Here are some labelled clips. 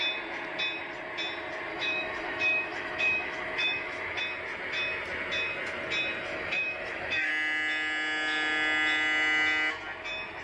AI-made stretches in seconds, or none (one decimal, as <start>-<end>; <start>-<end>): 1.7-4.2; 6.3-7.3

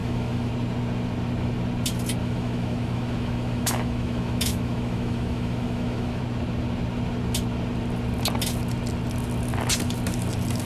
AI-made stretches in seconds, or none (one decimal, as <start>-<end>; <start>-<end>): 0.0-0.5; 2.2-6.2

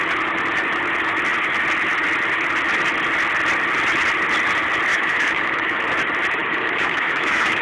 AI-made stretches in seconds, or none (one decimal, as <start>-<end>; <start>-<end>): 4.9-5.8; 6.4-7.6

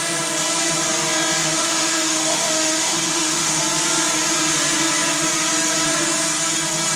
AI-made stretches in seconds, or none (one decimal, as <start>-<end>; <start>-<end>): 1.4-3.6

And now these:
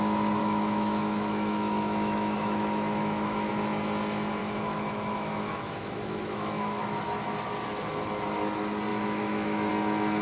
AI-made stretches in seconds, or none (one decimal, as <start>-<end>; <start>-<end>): 0.4-3.5; 4.4-7.0; 8.9-9.7